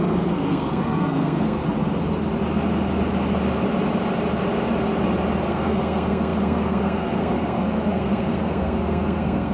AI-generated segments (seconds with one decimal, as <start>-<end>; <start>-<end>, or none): 0.0-1.6; 5.5-9.5